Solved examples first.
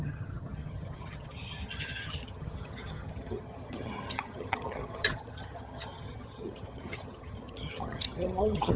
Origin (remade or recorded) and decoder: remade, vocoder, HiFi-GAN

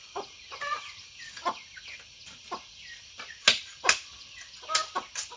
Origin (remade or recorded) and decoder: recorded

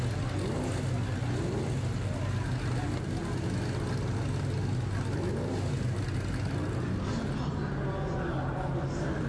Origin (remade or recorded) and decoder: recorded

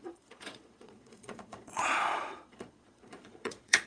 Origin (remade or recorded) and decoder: remade, vocoder, Vocos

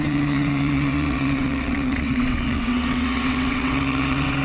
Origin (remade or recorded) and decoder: remade, vocoder, WaveNeXt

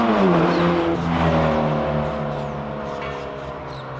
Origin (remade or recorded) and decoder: recorded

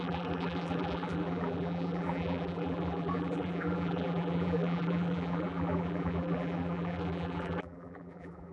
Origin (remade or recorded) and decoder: remade, vocoder, BigVGAN v2